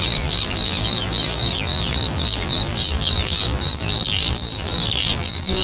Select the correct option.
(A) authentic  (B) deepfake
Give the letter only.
B